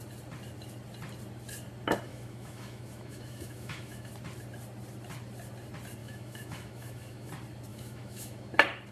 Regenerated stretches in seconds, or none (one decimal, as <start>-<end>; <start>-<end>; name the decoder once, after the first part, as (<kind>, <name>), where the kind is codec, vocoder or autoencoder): 2.1-4.1 (autoencoder, DAC-VAE); 6.0-7.3; 7.7-8.5

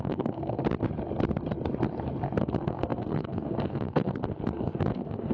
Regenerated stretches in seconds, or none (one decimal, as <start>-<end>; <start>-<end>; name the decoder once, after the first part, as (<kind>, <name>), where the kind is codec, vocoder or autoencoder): 0.0-0.6 (codec, SNAC); 2.4-5.3

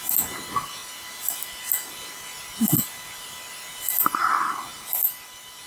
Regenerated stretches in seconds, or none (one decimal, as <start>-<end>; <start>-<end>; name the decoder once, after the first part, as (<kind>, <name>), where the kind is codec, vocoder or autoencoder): none

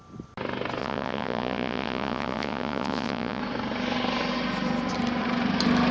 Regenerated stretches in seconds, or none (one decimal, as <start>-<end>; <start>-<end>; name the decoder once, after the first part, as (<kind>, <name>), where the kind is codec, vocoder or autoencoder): 0.8-3.4 (vocoder, Vocos)

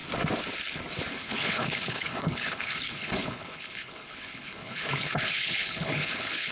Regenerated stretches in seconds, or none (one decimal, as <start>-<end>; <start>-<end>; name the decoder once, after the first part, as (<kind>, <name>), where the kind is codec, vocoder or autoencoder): 1.1-6.5 (codec, HILCodec)

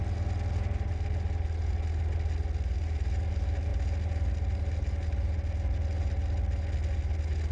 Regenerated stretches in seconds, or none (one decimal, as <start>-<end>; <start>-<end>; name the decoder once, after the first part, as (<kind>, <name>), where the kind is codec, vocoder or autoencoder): none

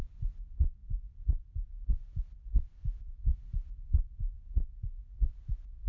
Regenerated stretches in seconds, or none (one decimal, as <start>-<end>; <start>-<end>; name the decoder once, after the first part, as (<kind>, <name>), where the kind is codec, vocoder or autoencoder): 0.8-1.7 (vocoder, BigVGAN v2); 2.8-4.4